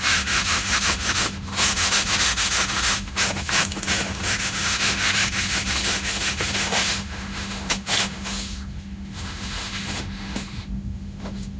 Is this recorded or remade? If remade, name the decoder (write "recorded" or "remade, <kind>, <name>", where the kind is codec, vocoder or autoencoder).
remade, autoencoder, DAC-VAE